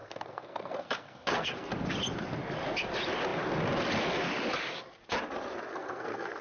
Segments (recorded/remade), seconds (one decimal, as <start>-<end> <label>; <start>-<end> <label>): 0.0-1.7 remade; 1.7-5.7 recorded; 5.7-6.4 remade